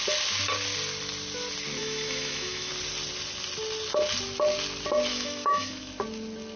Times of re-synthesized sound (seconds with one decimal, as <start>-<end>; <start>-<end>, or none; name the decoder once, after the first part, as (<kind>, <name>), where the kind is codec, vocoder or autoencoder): 1.8-2.7 (autoencoder, DAC-VAE); 5.1-5.9